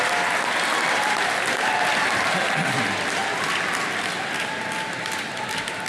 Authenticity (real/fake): real